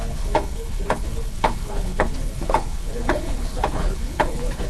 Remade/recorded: remade